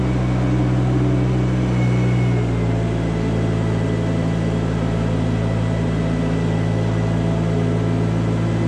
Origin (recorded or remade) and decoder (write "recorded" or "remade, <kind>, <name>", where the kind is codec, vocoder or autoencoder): recorded